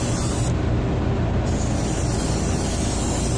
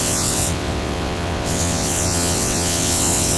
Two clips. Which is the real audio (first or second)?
first